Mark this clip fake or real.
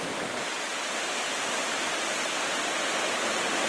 real